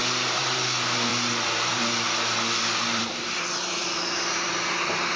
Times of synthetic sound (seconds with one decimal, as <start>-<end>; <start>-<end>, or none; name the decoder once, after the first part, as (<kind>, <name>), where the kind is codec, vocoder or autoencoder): 0.0-0.6 (vocoder, BigVGAN v2); 1.1-4.0